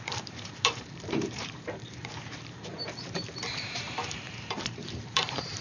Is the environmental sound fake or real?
fake